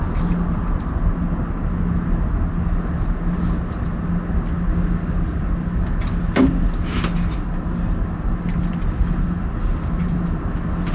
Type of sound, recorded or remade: recorded